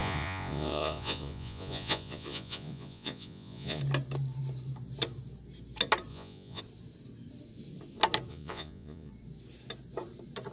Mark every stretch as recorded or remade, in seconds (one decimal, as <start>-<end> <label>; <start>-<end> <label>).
0.0-3.8 remade; 3.8-6.1 recorded; 6.1-6.6 remade; 6.6-8.3 recorded; 8.3-9.1 remade; 9.1-10.5 recorded